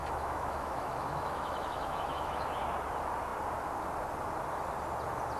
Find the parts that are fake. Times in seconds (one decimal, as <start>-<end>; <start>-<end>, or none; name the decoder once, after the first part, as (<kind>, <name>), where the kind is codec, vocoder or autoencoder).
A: 0.0-2.5 (autoencoder, DAC-VAE)

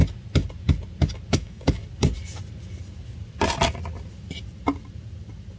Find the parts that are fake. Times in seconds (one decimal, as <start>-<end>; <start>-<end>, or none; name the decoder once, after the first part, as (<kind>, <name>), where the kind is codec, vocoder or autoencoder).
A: 1.3-1.8 (autoencoder, DAC-VAE)

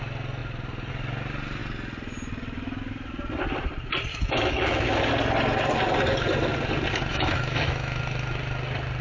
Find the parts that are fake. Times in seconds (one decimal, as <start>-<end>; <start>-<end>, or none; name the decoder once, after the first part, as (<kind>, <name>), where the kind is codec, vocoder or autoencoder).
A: 4.1-5.1 (autoencoder, DAC-VAE); 7.1-8.0

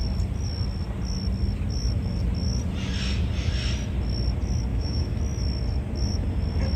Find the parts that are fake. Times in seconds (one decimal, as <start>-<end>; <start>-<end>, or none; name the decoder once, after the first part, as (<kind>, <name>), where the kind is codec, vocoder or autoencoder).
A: 4.7-5.2 (autoencoder, DAC-VAE)

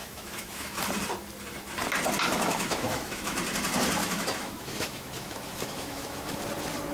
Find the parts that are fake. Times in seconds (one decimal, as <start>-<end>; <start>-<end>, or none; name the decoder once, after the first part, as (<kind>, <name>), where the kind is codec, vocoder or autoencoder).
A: 0.0-0.8 (autoencoder, DAC-VAE); 2.3-3.4; 4.0-6.4

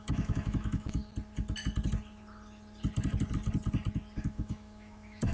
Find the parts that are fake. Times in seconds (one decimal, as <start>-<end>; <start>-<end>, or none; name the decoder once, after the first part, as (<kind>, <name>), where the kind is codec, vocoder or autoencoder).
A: 0.0-1.0 (autoencoder, DAC-VAE); 4.2-5.3

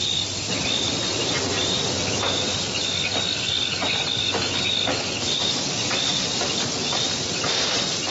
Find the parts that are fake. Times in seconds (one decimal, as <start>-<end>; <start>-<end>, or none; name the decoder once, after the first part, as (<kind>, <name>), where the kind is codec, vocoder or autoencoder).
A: none

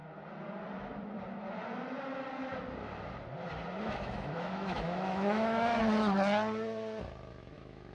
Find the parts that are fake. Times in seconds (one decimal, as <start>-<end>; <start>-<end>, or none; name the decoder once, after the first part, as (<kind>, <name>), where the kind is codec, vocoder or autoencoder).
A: 3.8-5.8 (autoencoder, DAC-VAE); 7.3-7.9